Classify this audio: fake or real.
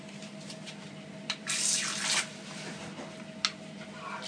real